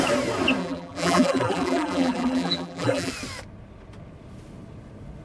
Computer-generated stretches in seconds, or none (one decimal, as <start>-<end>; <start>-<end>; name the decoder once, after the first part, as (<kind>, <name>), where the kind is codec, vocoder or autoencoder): 0.6-3.1 (vocoder, BigVGAN v2)